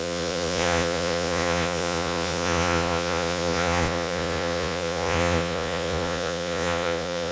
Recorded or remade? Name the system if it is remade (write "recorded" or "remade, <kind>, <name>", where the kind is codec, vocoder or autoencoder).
remade, vocoder, Vocos